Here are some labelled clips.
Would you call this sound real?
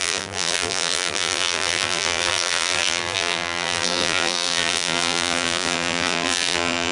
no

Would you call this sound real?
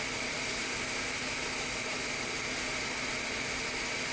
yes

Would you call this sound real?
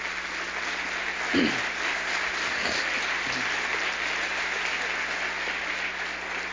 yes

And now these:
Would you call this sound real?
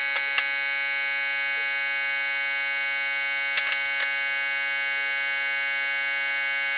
yes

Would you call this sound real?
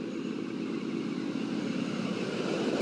yes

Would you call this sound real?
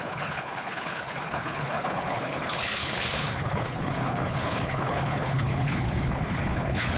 no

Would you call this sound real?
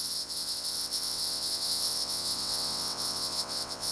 no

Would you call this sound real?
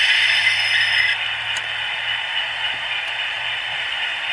yes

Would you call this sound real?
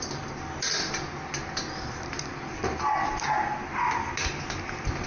yes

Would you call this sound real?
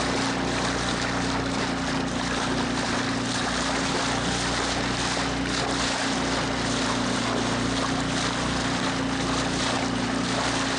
yes